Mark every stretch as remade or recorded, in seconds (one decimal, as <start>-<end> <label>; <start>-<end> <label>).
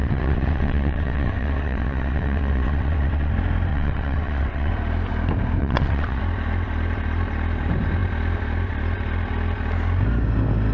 0.0-3.3 remade; 3.3-3.7 recorded; 3.7-4.7 remade; 4.7-5.6 recorded; 5.6-6.2 remade; 6.2-10.7 recorded